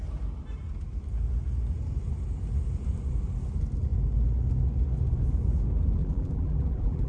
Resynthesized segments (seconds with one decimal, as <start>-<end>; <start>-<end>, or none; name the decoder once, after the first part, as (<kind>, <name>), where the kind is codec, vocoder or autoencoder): 6.0-7.1 (vocoder, BigVGAN v2)